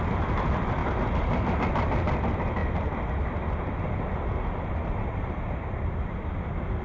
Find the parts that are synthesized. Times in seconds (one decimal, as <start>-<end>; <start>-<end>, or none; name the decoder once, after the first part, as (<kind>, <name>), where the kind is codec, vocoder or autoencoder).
none